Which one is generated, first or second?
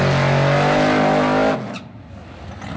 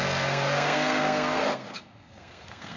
second